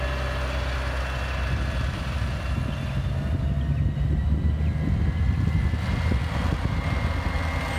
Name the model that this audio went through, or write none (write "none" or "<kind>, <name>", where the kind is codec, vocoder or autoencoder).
none